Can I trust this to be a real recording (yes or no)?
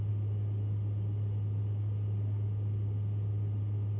yes